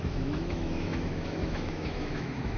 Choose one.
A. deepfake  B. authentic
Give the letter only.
A